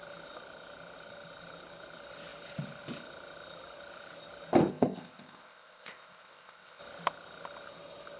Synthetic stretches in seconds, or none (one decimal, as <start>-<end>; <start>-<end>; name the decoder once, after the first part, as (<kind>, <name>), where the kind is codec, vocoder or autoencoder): 4.7-6.8 (codec, ZipCodec)